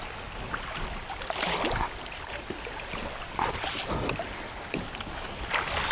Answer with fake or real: real